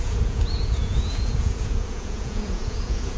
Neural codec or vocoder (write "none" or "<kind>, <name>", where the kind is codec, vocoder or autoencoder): vocoder, Vocos